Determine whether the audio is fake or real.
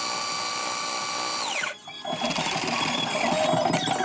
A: real